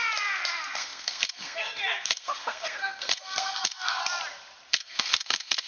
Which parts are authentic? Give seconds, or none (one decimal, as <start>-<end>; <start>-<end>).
0.0-0.5; 4.0-4.7

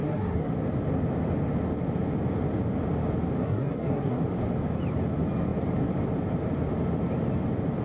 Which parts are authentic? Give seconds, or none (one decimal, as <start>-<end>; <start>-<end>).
0.5-3.4; 4.2-7.8

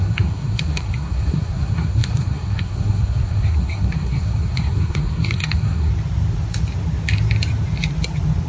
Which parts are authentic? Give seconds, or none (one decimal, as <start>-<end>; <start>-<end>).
5.9-8.5

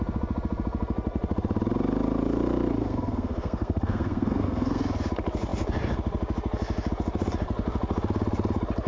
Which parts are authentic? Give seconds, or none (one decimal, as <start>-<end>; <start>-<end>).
0.0-2.8; 4.8-8.9

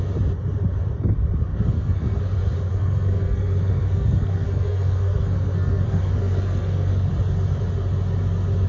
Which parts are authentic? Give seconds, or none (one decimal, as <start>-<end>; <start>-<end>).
0.0-1.5; 2.2-2.7; 7.1-8.7

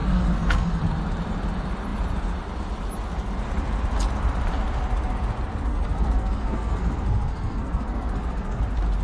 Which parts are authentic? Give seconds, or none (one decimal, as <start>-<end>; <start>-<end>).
0.8-5.7; 8.6-9.0

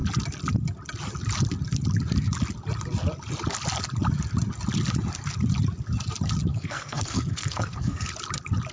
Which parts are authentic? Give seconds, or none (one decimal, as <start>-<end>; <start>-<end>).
0.0-6.5; 8.1-8.7